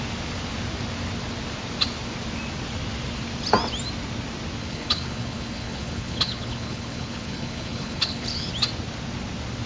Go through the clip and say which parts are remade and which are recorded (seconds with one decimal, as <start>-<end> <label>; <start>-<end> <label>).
0.0-4.6 recorded; 4.6-8.5 remade; 8.5-9.7 recorded